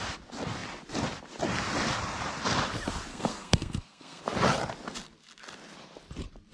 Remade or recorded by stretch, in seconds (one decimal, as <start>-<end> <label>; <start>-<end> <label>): 0.0-3.1 recorded; 3.1-4.2 remade; 4.2-6.5 recorded